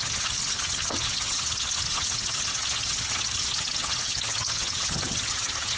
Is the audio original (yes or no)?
no